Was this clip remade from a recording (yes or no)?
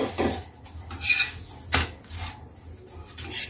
no